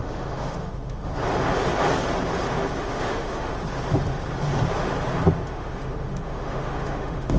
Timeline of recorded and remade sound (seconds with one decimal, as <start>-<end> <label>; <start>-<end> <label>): 0.0-1.1 remade; 1.1-2.8 recorded; 2.8-3.5 remade; 3.5-5.5 recorded; 5.5-7.4 remade